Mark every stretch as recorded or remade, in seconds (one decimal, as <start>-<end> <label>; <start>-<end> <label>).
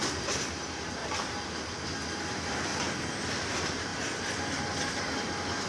0.0-1.0 remade; 1.0-2.2 recorded; 2.2-2.7 remade; 2.7-3.5 recorded; 3.5-3.9 remade; 3.9-4.9 recorded; 4.9-5.7 remade